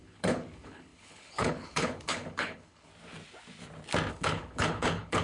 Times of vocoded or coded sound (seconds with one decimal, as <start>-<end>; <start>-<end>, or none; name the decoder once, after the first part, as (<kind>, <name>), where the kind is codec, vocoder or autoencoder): 0.0-2.9 (codec, HILCodec); 4.1-5.2